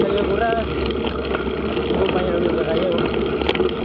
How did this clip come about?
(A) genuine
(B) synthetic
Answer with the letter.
A